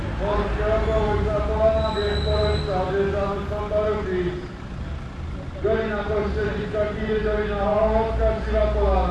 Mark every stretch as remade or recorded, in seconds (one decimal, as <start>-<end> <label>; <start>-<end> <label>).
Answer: 0.0-9.1 recorded